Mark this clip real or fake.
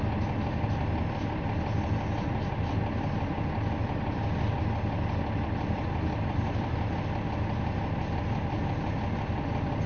real